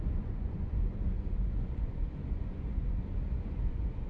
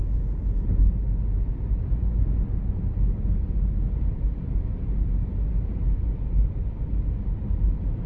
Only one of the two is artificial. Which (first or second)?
first